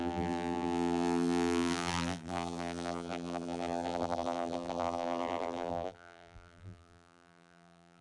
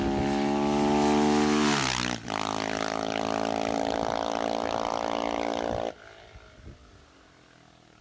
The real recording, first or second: second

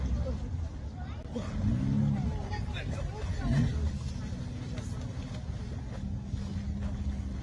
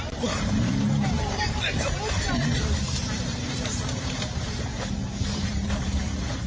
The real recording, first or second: first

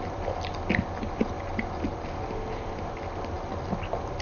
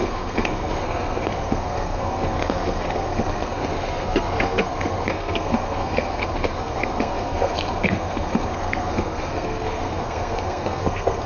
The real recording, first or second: first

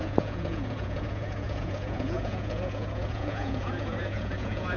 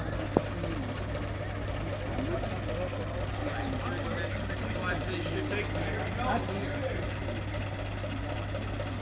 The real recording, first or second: second